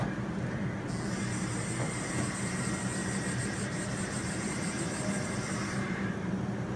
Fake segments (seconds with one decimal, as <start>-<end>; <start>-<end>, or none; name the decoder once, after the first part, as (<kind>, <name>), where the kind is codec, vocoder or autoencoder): 3.0-6.3 (vocoder, BigVGAN v2)